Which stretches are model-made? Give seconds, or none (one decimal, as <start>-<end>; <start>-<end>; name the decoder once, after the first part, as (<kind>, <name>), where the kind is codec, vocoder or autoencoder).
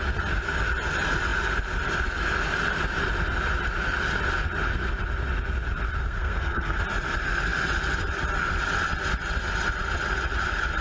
6.0-6.8 (codec, SNAC)